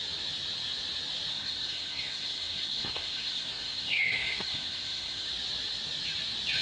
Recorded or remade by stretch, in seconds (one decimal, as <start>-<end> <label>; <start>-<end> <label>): 0.0-1.3 recorded; 1.3-5.3 remade; 5.3-6.6 recorded

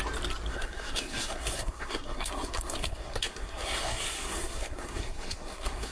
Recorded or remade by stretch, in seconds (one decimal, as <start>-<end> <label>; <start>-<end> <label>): 0.0-0.5 recorded; 0.5-5.9 remade